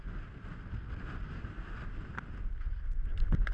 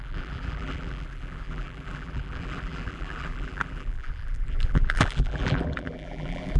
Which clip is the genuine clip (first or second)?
first